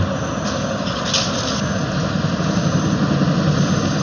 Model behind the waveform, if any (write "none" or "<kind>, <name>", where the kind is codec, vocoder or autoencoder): none